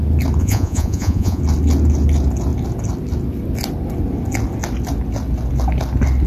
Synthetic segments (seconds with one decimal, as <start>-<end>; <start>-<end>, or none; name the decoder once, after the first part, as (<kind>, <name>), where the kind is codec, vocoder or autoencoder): 0.4-1.4 (vocoder, Vocos)